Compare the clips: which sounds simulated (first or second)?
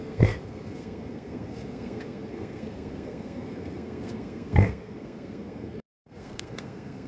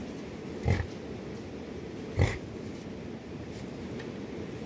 first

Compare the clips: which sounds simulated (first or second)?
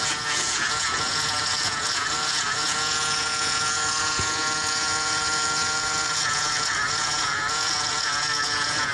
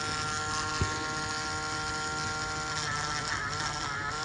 first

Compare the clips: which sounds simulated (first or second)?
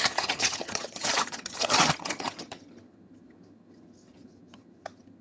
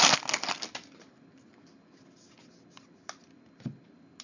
first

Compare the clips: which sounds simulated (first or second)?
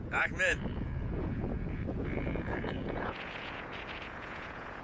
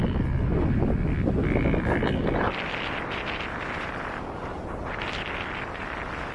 first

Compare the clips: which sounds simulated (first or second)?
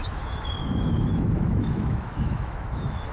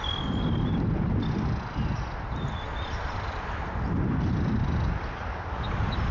first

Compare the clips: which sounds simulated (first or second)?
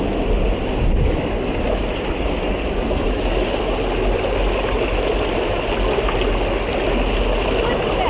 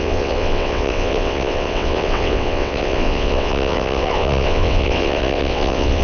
second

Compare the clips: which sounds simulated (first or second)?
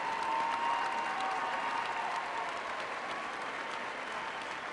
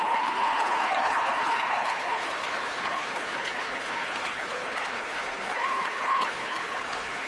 second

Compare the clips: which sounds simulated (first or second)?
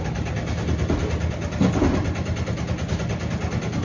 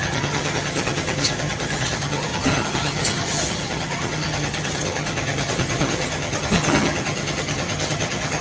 second